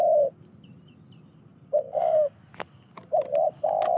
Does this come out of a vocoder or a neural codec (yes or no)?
no